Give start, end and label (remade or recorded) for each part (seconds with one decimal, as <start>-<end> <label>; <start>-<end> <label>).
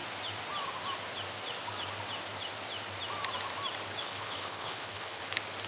0.0-4.0 recorded; 4.0-5.2 remade; 5.2-5.7 recorded